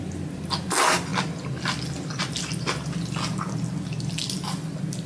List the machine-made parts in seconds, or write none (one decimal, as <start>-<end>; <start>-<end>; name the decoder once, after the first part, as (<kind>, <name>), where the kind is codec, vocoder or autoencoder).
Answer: none